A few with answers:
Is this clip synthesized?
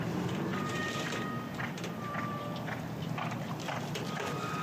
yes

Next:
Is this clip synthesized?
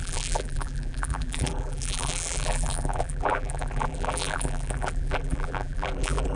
yes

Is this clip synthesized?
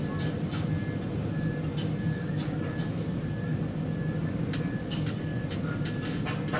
no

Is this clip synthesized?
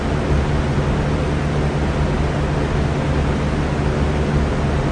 no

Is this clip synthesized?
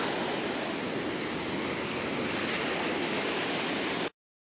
no